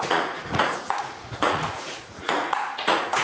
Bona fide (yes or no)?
no